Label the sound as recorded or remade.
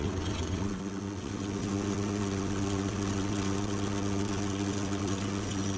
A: remade